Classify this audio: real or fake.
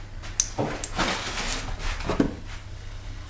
real